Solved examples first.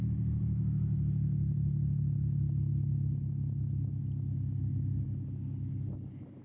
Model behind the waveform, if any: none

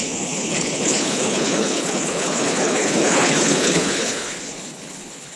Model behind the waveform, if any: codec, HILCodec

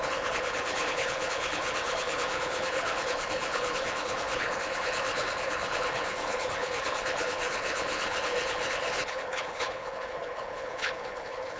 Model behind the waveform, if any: codec, HILCodec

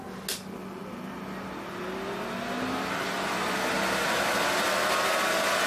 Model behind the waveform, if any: none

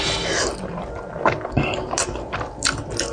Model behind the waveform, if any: none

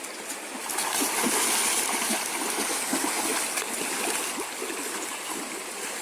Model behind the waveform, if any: none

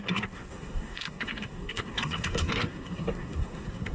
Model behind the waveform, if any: codec, SNAC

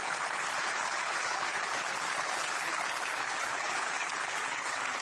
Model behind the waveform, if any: codec, HILCodec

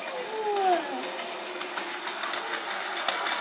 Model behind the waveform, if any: none